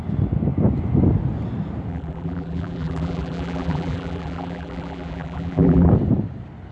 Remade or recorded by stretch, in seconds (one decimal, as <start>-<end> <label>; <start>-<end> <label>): 0.0-1.9 recorded; 1.9-5.9 remade; 5.9-6.7 recorded